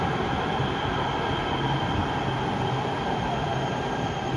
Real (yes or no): no